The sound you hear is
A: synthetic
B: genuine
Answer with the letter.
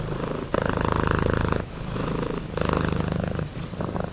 B